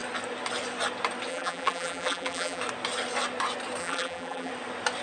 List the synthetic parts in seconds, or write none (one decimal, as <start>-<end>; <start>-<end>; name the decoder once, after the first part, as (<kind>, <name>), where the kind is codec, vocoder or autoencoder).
1.3-2.6 (vocoder, BigVGAN v2); 3.8-4.5